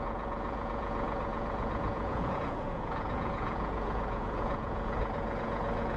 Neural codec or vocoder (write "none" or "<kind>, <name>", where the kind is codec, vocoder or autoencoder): vocoder, Vocos